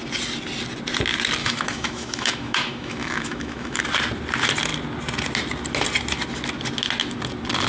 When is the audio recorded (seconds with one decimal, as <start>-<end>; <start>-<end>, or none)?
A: 0.0-1.4; 3.8-7.7